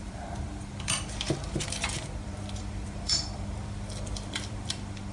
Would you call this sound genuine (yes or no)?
no